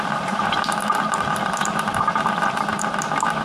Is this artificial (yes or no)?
yes